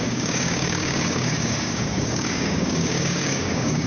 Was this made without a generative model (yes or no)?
no